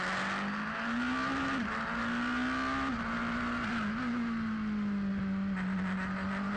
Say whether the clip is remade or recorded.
recorded